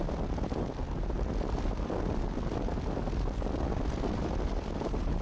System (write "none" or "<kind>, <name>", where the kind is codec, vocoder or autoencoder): none